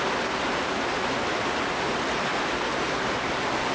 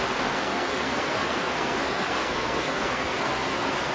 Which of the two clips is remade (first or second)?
second